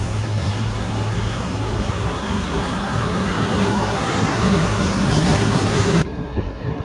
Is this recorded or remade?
remade